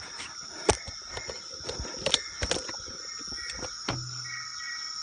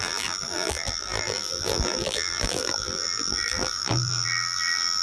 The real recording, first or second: first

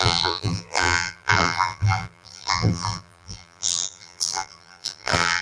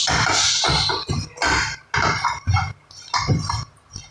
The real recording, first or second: second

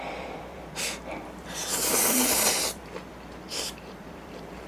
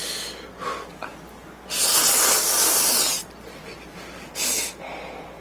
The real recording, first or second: second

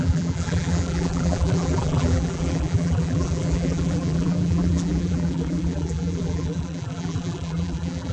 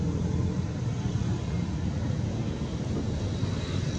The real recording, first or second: second